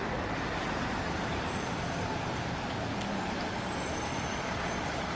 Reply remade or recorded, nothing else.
remade